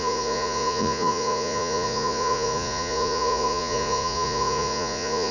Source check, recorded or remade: remade